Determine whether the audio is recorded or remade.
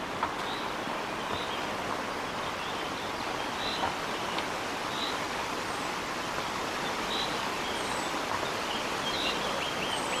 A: recorded